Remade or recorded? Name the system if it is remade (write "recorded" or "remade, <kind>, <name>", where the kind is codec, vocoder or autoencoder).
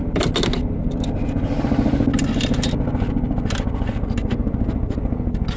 recorded